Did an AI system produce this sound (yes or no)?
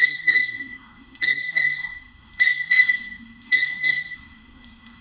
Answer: yes